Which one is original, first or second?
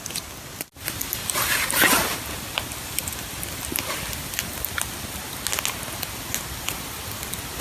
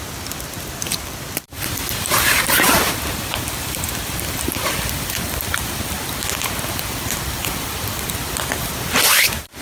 first